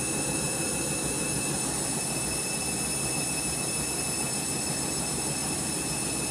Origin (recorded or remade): recorded